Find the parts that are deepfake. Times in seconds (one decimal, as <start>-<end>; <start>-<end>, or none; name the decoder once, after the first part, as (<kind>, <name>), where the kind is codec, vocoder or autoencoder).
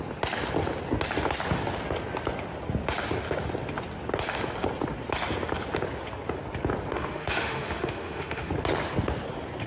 6.9-8.5 (autoencoder, DAC-VAE)